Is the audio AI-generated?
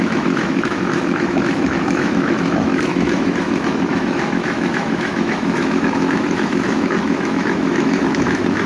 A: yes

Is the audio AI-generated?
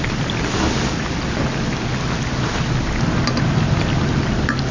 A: no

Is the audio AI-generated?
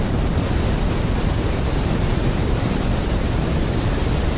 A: no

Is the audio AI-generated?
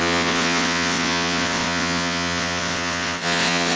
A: yes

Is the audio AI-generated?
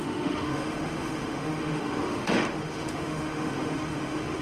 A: yes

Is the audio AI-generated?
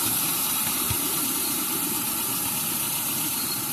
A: yes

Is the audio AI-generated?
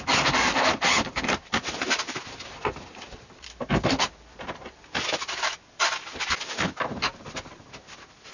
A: yes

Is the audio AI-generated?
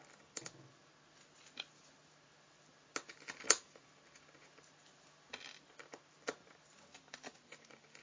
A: no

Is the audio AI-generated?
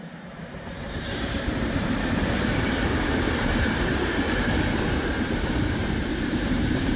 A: yes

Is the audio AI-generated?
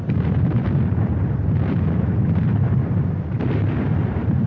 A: yes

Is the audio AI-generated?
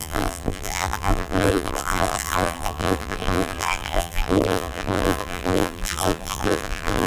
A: yes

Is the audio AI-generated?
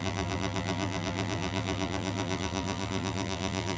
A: yes